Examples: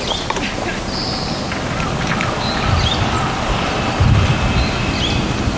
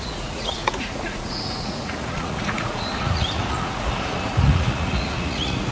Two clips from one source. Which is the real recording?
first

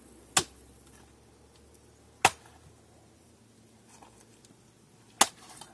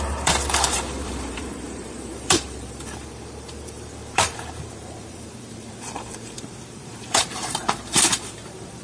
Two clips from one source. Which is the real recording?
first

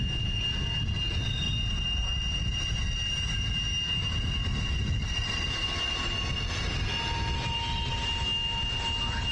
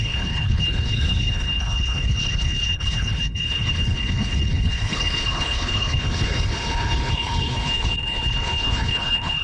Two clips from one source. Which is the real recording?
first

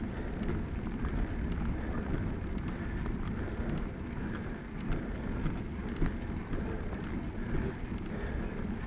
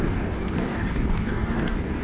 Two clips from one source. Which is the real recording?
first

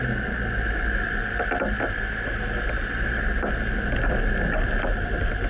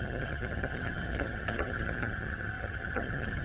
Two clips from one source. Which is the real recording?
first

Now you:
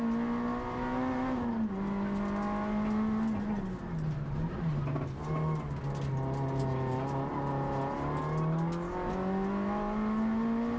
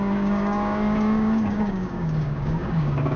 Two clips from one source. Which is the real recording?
first